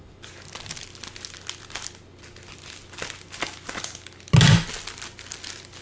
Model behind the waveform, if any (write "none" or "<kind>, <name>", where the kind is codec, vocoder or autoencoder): none